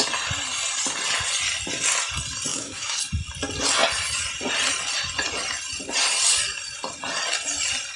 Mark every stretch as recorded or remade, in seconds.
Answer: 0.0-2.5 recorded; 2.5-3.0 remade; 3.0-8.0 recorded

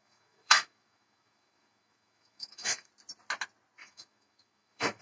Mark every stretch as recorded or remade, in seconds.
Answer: 0.0-2.9 remade; 2.9-3.8 recorded; 3.8-5.0 remade

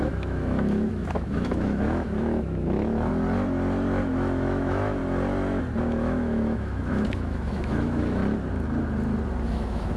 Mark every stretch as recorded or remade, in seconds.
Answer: 0.0-3.1 remade; 3.1-4.0 recorded; 4.0-5.0 remade; 5.0-5.8 recorded; 5.8-8.2 remade; 8.2-9.5 recorded; 9.5-10.0 remade